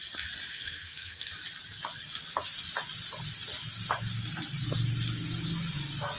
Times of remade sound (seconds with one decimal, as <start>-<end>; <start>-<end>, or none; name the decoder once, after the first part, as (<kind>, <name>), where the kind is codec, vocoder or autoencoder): 0.5-1.3 (codec, SNAC)